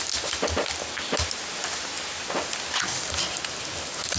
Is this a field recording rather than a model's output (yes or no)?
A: yes